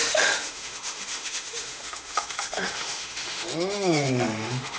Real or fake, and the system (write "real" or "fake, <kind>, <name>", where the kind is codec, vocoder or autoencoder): fake, autoencoder, DAC-VAE